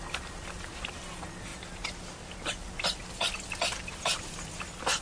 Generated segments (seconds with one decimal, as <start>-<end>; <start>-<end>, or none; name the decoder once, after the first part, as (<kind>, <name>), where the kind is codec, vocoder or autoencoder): none